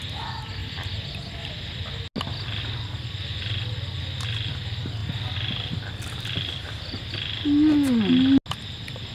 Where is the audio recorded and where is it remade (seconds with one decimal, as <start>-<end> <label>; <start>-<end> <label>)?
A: 0.0-5.0 recorded; 5.0-6.7 remade; 6.7-9.1 recorded